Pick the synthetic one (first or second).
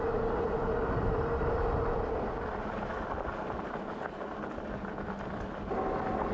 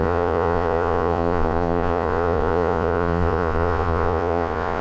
second